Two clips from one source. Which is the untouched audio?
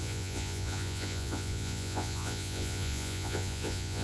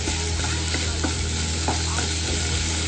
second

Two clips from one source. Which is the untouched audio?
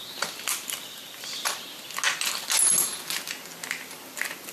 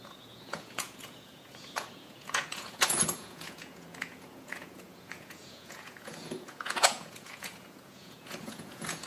first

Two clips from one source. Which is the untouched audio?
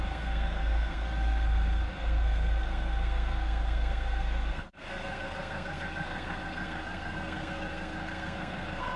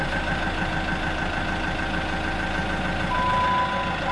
second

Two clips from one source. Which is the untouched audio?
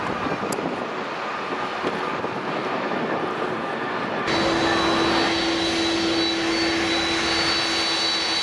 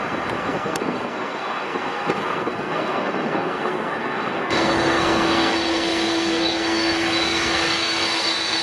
first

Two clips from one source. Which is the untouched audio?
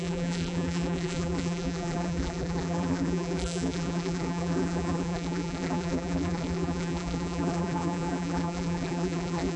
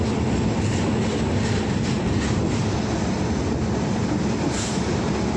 second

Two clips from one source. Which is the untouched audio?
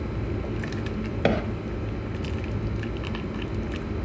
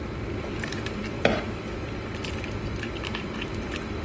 first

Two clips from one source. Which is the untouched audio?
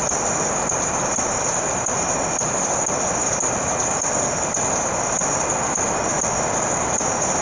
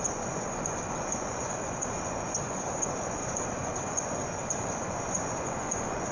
first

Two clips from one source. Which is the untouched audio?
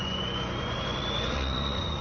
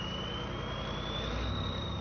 second